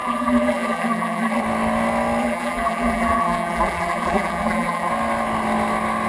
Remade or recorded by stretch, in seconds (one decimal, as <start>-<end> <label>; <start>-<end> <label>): 0.0-1.4 remade; 1.4-2.2 recorded; 2.2-4.9 remade; 4.9-6.1 recorded